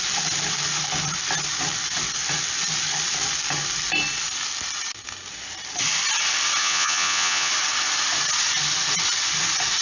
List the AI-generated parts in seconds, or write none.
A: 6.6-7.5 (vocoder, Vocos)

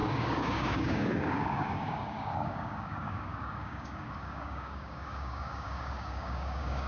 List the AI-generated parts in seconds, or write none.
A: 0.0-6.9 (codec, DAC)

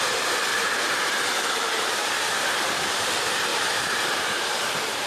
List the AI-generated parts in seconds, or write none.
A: 0.5-2.3 (vocoder, BigVGAN v2); 3.5-5.1

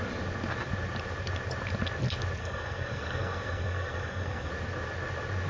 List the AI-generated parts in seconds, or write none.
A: 2.4-4.5 (codec, SNAC)